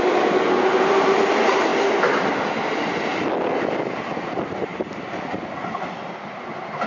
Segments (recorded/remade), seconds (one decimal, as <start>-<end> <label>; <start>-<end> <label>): 0.0-6.9 recorded